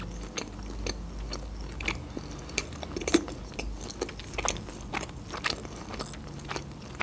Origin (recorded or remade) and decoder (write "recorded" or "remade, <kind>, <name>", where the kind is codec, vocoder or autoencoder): recorded